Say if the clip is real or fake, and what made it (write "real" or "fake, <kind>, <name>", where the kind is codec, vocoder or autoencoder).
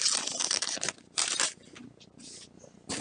real